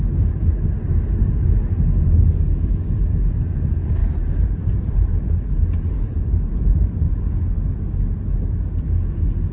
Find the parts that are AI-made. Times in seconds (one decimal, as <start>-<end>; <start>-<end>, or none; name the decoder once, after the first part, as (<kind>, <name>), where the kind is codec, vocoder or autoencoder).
4.0-7.1 (vocoder, BigVGAN v2)